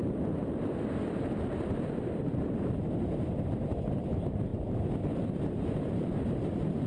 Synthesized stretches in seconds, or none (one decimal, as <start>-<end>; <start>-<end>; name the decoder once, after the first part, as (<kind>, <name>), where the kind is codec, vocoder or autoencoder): 0.0-4.1 (vocoder, BigVGAN v2); 4.5-5.4